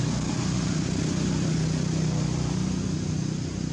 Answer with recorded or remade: recorded